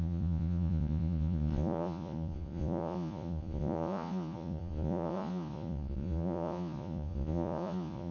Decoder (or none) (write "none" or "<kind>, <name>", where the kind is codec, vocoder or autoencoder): vocoder, Vocos